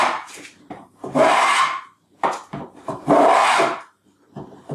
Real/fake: fake